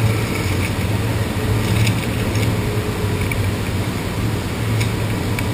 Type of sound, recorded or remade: recorded